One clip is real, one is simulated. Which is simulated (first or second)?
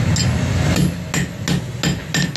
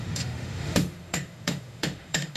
second